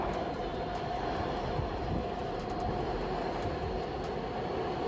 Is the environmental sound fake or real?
real